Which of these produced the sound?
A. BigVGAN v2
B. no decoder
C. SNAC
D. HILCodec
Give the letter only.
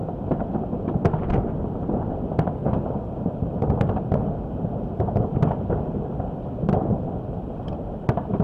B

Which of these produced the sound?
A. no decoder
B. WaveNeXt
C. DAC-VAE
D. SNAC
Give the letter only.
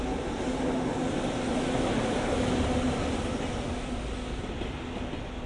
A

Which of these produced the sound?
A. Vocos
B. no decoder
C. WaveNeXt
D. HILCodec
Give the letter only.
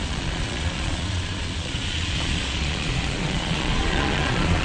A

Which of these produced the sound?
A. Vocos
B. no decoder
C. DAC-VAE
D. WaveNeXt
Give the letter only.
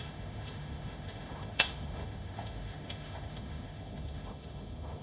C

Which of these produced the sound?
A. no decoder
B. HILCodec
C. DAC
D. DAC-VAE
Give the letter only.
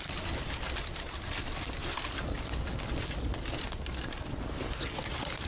A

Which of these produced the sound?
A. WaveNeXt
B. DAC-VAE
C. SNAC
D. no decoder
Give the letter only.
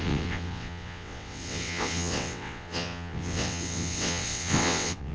A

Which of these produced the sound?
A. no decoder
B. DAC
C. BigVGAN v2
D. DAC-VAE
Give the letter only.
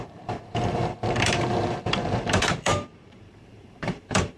C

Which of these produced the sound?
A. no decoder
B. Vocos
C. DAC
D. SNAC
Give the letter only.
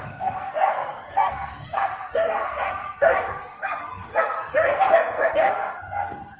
D